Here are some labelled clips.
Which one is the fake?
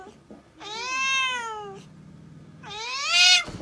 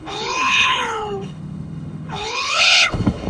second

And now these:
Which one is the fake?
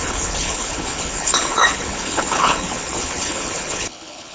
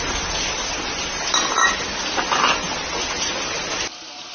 first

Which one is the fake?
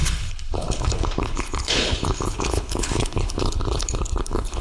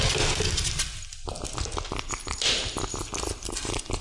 first